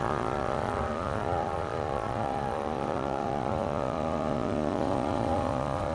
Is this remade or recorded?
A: remade